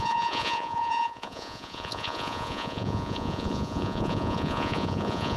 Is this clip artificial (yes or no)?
yes